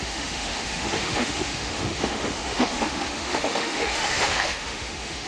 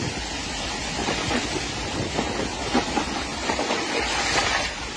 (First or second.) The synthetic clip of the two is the first